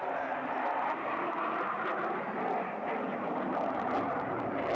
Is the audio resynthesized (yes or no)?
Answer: no